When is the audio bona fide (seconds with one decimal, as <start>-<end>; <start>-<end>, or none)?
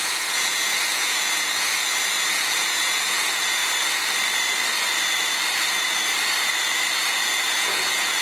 1.7-2.3; 3.6-7.0